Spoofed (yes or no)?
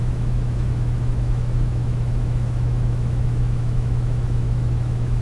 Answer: yes